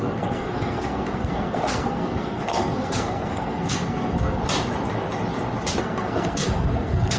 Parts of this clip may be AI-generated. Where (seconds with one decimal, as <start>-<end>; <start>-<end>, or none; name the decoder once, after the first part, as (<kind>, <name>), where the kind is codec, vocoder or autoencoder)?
0.0-4.4 (codec, SNAC); 5.8-7.2